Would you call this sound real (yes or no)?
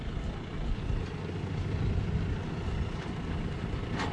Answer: yes